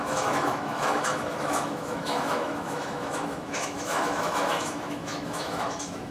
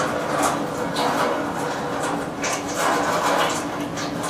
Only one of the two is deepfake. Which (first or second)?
first